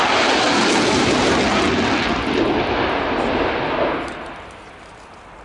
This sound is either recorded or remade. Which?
recorded